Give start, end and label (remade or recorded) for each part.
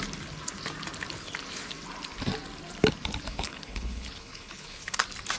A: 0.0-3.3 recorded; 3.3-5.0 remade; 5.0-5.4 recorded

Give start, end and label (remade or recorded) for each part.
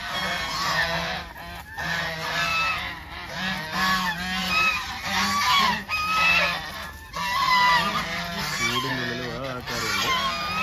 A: 0.0-2.5 recorded; 2.5-3.4 remade; 3.4-4.4 recorded; 4.4-4.9 remade; 4.9-10.6 recorded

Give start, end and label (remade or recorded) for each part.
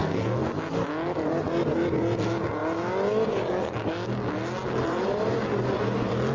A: 0.0-0.6 remade; 0.6-6.3 recorded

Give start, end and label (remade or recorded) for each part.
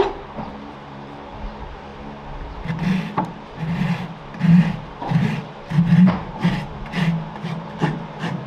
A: 0.0-1.9 remade; 1.9-3.1 recorded; 3.1-8.5 remade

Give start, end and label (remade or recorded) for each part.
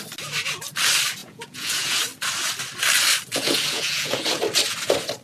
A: 0.0-1.2 recorded; 1.2-2.0 remade; 2.0-3.3 recorded; 3.3-4.4 remade; 4.4-5.2 recorded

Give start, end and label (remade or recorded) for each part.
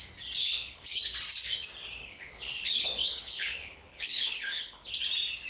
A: 0.0-0.4 recorded; 0.4-1.0 remade; 1.0-2.0 recorded; 2.0-4.9 remade; 4.9-5.5 recorded